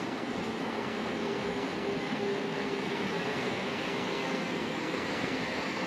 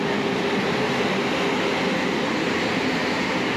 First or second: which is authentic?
second